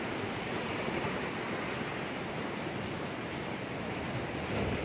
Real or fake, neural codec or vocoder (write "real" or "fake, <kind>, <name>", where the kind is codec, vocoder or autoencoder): real